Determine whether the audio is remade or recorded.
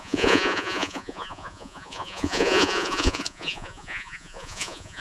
remade